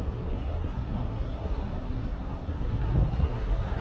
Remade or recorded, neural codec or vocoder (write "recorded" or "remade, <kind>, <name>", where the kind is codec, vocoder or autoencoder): remade, codec, SNAC